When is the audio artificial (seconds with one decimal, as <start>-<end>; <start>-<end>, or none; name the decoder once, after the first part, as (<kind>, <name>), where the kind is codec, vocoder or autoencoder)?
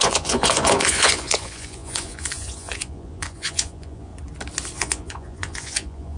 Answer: 0.0-4.1 (vocoder, Vocos); 4.8-6.2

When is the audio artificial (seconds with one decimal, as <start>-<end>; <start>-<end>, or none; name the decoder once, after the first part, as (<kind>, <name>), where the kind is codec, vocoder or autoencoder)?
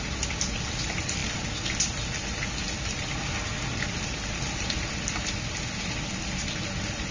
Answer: none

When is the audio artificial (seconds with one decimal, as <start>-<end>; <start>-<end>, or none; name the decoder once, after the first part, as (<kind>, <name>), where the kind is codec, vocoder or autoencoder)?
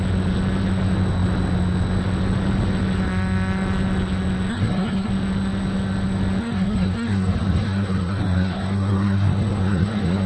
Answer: 4.5-5.1 (codec, SNAC); 6.4-10.3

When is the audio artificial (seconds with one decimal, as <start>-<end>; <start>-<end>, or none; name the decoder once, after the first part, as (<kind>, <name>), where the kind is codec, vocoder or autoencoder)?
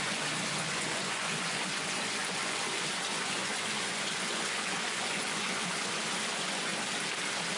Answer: 0.0-6.7 (vocoder, Vocos)